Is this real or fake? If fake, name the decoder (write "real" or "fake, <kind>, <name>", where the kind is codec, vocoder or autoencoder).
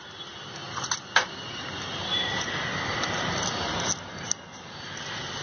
real